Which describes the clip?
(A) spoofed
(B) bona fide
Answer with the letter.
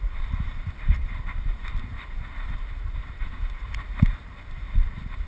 B